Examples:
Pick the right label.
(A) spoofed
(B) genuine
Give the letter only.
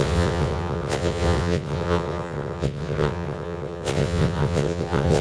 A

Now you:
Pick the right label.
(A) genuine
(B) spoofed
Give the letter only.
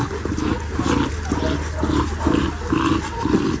A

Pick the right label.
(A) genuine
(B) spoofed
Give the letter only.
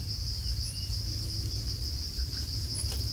A